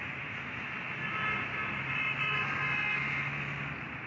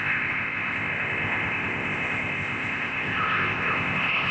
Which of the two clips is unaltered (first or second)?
first